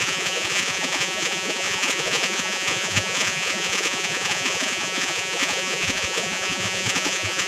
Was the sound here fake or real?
fake